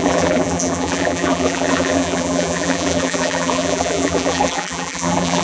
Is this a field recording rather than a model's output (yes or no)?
no